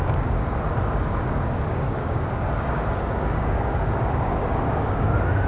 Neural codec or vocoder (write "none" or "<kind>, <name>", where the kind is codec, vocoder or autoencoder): codec, DAC